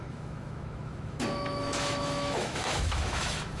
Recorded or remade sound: remade